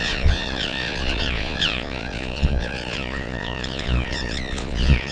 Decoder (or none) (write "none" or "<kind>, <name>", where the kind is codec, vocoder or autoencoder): vocoder, Vocos